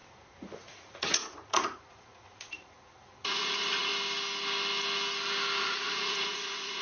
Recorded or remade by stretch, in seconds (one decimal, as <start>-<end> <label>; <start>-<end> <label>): 0.0-3.9 remade; 3.9-5.6 recorded; 5.6-6.8 remade